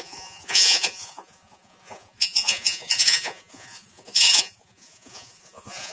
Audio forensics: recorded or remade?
remade